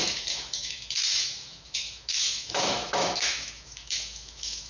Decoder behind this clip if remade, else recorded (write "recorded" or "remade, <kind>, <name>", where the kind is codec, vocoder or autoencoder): remade, autoencoder, DAC-VAE